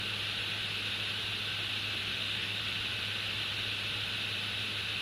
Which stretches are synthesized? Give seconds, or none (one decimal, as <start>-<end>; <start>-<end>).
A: 2.0-2.6